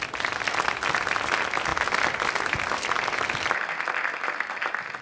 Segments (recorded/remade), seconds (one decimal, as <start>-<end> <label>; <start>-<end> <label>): 0.0-5.0 recorded